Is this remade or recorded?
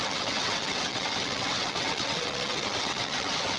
remade